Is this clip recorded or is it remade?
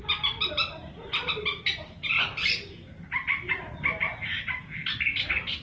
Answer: recorded